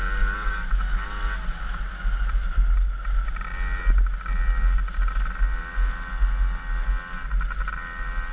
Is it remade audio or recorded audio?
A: recorded